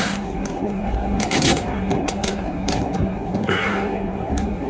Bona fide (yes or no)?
no